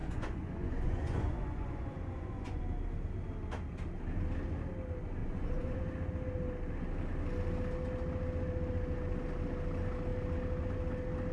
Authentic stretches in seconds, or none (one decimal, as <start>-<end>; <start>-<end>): 2.6-5.2; 5.8-11.3